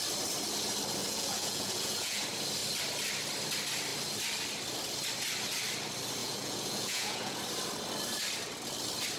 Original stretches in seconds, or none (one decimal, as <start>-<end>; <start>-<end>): 0.0-1.0; 2.2-6.2; 7.4-9.2